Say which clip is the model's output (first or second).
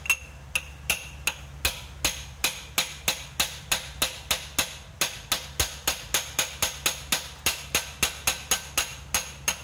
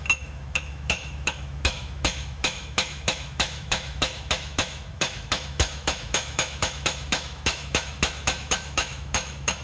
second